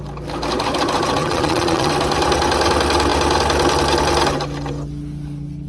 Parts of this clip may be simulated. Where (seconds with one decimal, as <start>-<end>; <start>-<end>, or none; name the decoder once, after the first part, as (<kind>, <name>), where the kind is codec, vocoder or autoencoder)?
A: 1.2-1.9 (vocoder, Vocos)